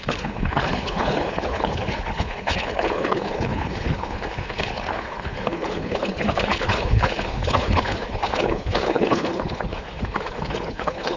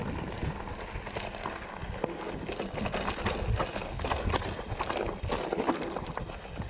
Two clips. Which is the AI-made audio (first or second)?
first